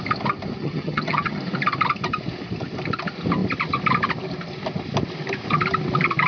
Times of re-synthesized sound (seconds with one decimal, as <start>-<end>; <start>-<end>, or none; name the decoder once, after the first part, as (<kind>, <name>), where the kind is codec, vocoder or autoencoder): 0.6-1.4 (vocoder, HiFi-GAN)